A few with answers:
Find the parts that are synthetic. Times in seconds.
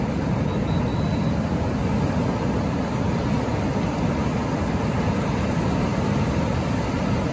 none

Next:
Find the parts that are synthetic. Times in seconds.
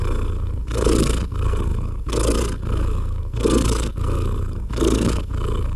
0.0-5.8 (codec, SNAC)